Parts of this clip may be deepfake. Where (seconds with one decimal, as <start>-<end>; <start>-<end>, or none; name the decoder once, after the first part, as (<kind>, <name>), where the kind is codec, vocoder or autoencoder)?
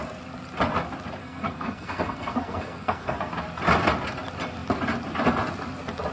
1.2-3.3 (codec, SNAC)